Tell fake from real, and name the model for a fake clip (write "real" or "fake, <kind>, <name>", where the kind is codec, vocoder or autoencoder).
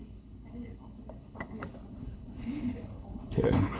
fake, codec, HILCodec